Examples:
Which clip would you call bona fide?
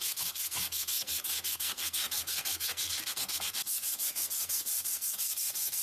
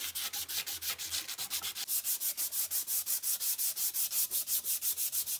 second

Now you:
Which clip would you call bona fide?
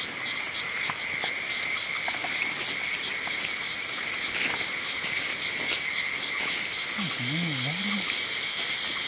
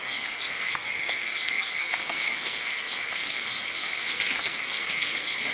first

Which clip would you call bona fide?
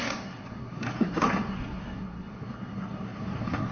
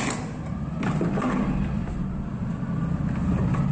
second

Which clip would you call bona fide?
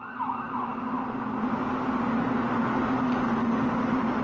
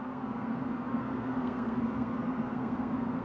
first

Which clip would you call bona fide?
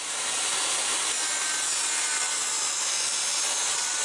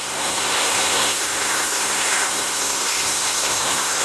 first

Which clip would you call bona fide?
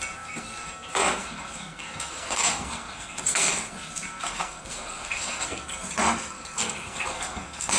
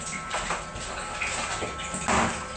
second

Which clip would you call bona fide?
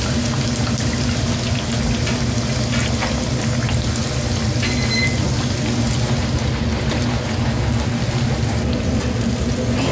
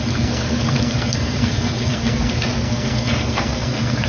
first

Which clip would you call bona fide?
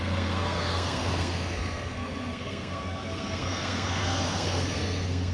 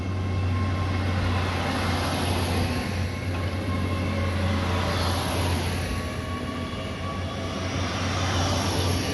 second